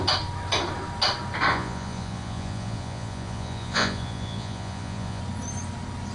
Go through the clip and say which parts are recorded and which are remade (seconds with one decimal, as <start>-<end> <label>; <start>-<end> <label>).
0.0-1.5 recorded; 1.5-5.2 remade; 5.2-6.1 recorded